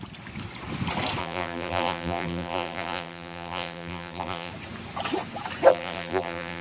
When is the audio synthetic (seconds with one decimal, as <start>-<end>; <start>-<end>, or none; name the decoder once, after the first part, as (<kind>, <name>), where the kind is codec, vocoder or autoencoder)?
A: 1.2-4.5 (vocoder, BigVGAN v2); 5.7-6.6